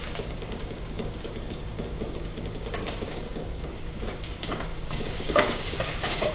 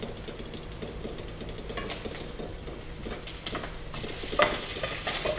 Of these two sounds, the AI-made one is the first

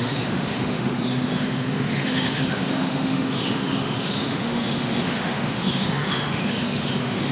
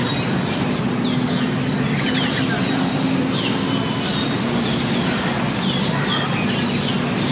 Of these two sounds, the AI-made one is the first